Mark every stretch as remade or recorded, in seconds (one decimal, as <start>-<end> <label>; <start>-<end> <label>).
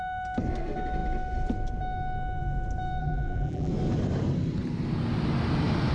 0.0-3.0 recorded; 3.0-3.7 remade; 3.7-5.9 recorded